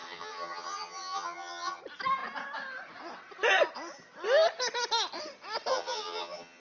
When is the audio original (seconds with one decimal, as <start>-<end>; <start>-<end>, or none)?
1.8-5.7